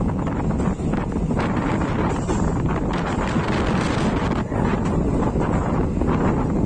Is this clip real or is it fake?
real